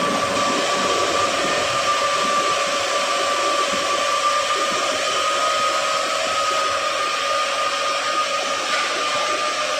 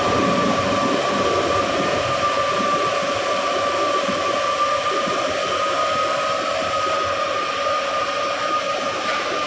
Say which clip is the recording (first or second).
first